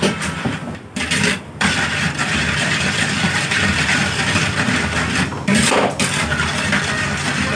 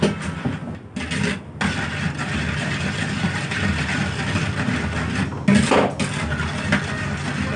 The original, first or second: second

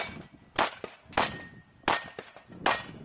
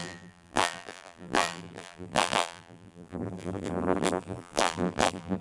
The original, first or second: first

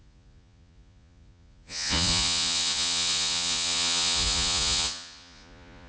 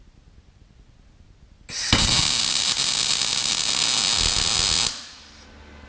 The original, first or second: second